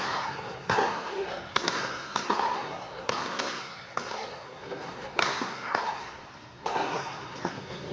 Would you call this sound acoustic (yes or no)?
no